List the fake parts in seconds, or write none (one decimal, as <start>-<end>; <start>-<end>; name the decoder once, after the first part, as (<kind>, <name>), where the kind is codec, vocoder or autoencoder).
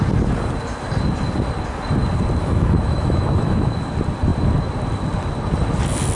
2.4-3.9 (autoencoder, DAC-VAE)